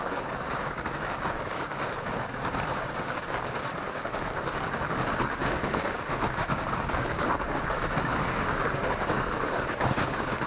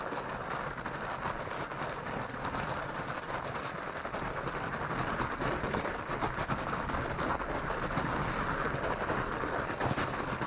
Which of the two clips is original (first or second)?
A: second